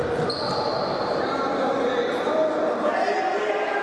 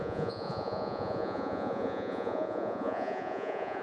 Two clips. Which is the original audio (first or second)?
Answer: first